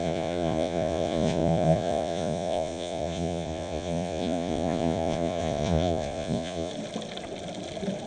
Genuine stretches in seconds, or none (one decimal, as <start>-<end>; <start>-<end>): 6.7-8.1